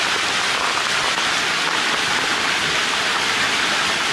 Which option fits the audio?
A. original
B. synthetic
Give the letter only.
A